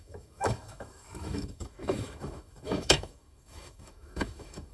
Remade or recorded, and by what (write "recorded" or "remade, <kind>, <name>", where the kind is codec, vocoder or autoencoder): remade, autoencoder, DAC-VAE